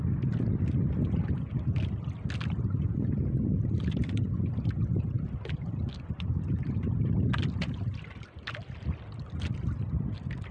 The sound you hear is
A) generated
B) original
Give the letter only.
B